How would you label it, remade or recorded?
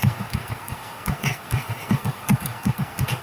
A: remade